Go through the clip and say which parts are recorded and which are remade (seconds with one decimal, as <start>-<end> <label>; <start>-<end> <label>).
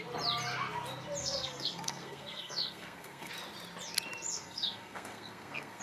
0.0-1.2 recorded; 1.2-3.3 remade; 3.3-4.3 recorded; 4.3-5.8 remade